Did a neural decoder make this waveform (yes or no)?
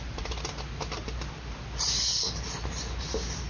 no